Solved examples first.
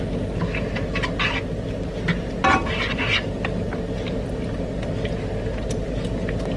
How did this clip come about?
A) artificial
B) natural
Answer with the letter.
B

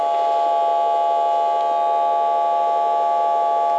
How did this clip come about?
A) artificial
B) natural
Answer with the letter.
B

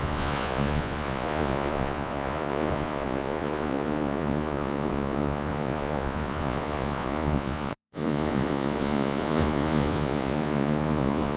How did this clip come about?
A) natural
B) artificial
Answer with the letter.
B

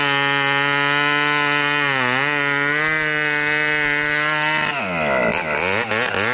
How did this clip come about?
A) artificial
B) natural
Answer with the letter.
B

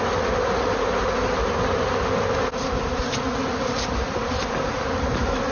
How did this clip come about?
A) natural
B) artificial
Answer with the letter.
A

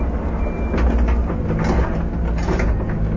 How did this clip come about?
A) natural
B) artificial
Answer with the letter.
A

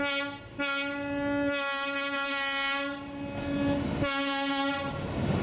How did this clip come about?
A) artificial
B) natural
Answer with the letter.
B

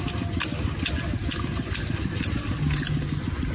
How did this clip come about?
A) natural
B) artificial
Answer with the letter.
A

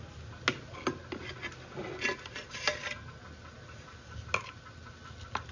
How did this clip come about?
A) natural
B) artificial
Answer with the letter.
A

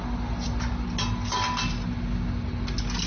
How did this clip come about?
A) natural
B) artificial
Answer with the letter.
A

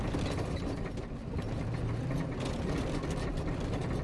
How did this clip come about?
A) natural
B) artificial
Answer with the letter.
A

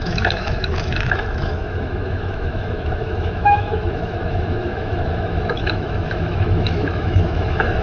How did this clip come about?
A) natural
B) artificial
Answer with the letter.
B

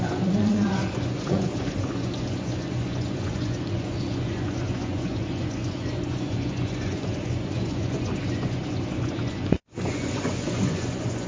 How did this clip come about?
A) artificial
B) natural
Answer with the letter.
A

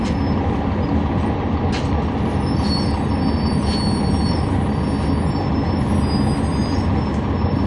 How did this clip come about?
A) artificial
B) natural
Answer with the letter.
B